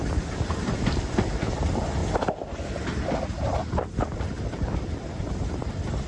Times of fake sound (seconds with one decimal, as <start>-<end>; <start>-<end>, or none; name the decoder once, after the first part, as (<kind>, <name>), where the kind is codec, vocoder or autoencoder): none